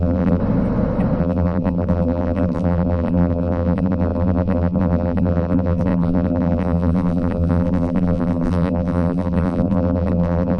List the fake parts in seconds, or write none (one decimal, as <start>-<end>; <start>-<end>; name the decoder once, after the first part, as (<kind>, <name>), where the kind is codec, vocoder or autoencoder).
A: 0.0-0.4 (vocoder, BigVGAN v2); 1.2-10.6

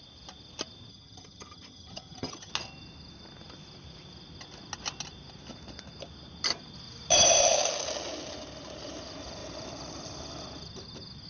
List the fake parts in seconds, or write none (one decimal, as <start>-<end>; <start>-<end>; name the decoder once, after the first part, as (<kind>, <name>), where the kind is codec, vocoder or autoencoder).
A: 0.9-2.5 (vocoder, HiFi-GAN)

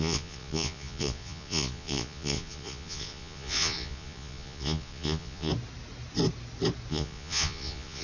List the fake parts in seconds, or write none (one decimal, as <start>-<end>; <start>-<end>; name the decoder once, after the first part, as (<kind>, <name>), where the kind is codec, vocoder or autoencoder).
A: 0.0-5.5 (vocoder, Vocos); 6.9-8.0

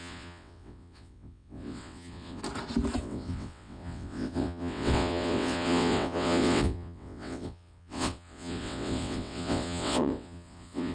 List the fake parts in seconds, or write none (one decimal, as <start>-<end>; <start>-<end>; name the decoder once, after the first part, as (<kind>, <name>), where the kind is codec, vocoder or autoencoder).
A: 0.0-2.4 (vocoder, WaveNeXt); 3.0-10.9